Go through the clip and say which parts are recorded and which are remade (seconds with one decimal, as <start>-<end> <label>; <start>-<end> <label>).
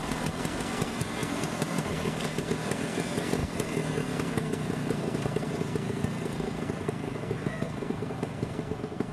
0.0-9.1 remade